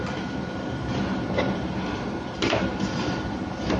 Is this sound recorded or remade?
remade